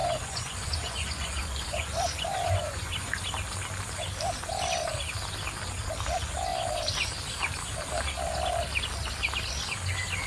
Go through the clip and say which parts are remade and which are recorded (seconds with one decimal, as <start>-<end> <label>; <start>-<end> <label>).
0.0-3.2 remade; 3.2-10.3 recorded